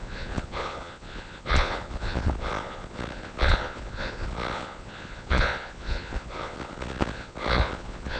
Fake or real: fake